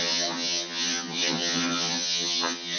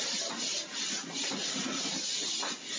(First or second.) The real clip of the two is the second